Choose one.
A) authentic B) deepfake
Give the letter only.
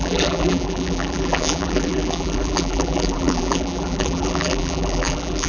B